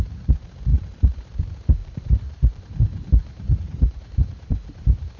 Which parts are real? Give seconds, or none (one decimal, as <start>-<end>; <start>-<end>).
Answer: 0.0-0.7; 1.4-1.8